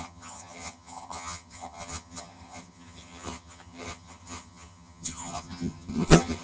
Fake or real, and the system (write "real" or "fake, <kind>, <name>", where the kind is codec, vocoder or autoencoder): fake, vocoder, HiFi-GAN